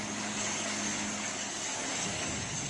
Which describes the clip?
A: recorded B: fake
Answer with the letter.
B